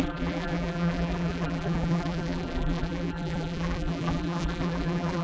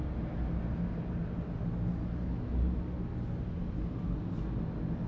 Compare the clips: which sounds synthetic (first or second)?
first